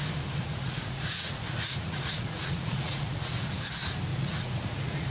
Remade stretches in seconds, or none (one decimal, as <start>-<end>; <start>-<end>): 0.4-3.5; 4.1-5.1